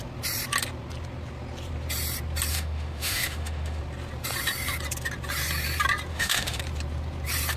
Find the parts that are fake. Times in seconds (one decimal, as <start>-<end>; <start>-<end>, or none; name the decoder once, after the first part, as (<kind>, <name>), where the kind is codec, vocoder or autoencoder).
2.5-3.8 (autoencoder, DAC-VAE); 6.1-6.6